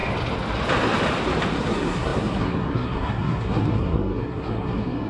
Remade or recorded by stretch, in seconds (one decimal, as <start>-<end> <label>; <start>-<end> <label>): 0.0-1.6 recorded; 1.6-5.1 remade